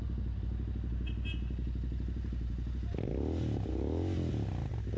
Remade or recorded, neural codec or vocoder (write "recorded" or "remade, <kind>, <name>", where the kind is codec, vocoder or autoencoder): recorded